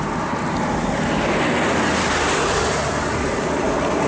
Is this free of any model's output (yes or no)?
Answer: yes